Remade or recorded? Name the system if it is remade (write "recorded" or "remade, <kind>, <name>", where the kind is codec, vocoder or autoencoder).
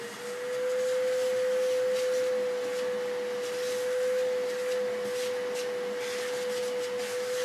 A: recorded